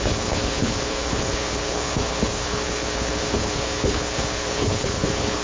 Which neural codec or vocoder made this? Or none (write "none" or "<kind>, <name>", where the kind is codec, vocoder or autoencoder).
codec, HILCodec